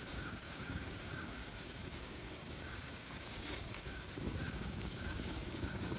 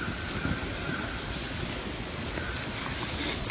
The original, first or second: second